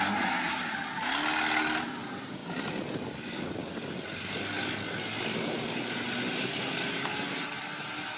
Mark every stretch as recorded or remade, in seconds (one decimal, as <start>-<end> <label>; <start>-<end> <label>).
0.0-8.2 recorded